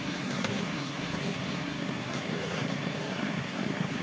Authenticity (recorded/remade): remade